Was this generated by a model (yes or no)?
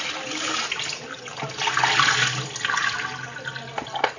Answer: no